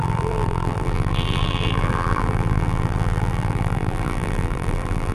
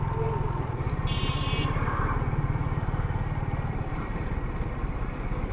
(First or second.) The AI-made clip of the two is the first